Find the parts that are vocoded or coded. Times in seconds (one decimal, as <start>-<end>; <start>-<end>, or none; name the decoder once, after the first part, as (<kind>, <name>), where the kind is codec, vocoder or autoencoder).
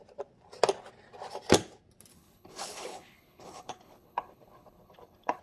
2.1-5.4 (codec, HILCodec)